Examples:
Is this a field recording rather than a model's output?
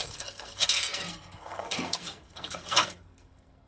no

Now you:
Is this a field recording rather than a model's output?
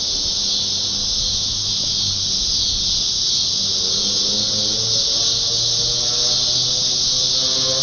yes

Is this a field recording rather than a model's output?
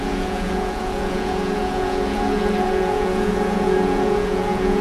no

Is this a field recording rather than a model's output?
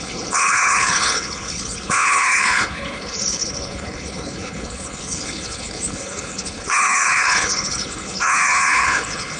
no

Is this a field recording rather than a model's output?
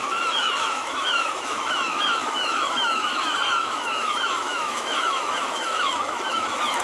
no